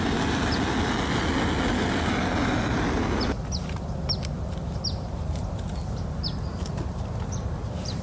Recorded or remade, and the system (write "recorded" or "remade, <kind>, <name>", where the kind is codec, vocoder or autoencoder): recorded